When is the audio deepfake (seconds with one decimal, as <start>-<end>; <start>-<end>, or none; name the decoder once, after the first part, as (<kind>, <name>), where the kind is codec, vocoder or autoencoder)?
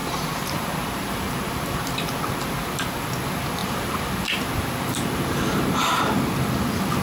0.0-1.9 (vocoder, BigVGAN v2); 3.6-6.0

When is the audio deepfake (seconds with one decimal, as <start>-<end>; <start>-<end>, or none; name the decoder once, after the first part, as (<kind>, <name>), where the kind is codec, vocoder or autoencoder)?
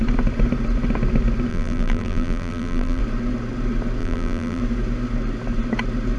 1.5-3.0 (vocoder, BigVGAN v2); 4.0-4.6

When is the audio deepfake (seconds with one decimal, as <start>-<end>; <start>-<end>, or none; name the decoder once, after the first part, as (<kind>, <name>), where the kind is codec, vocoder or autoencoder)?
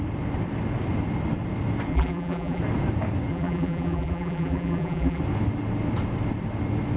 1.9-2.6 (vocoder, BigVGAN v2); 3.3-5.2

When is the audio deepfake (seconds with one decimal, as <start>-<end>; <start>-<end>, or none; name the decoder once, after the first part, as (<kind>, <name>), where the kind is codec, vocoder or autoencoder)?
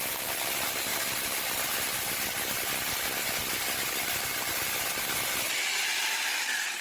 0.0-6.8 (vocoder, BigVGAN v2)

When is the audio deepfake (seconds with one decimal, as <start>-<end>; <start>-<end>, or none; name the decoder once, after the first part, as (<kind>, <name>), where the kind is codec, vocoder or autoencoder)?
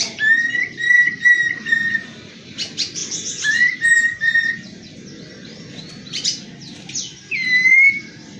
3.0-4.0 (vocoder, BigVGAN v2); 7.7-8.4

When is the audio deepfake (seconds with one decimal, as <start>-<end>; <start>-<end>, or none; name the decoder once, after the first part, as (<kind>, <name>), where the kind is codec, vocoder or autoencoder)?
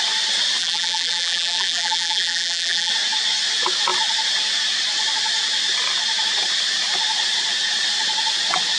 0.6-2.9 (vocoder, BigVGAN v2)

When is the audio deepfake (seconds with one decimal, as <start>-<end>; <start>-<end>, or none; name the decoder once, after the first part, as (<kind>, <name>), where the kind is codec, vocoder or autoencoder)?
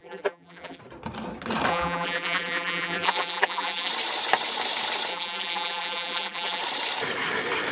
0.0-0.8 (vocoder, BigVGAN v2); 1.7-3.9; 5.1-6.6